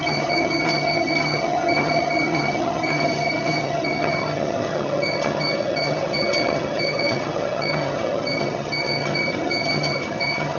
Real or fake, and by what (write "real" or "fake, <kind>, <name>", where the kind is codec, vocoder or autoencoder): fake, vocoder, HiFi-GAN